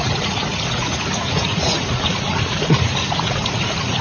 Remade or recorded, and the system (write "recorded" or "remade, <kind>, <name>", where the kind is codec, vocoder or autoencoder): remade, vocoder, Vocos